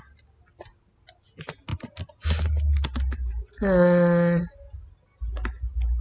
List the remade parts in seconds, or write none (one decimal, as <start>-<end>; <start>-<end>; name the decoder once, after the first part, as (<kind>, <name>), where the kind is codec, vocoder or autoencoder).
none